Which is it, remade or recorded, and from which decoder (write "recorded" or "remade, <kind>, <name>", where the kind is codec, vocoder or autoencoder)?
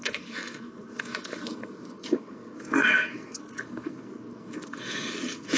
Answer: remade, codec, SNAC